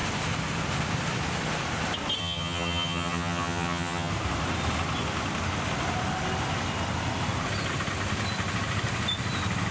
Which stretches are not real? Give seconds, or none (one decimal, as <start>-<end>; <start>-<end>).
2.2-4.1